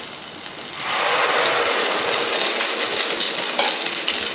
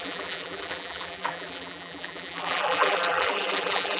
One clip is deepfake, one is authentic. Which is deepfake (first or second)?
second